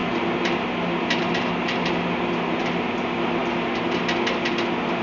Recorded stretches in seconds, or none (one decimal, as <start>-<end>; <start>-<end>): 0.0-5.0